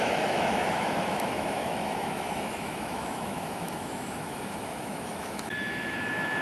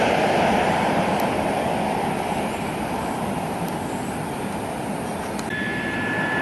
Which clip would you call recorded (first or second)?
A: second